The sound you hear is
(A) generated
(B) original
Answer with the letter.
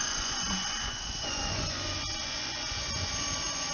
A